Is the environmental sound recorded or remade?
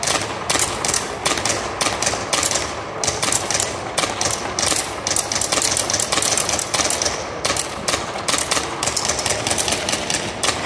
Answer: recorded